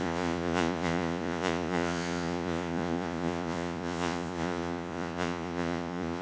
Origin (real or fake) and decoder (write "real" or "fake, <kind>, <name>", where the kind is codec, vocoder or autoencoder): fake, vocoder, Vocos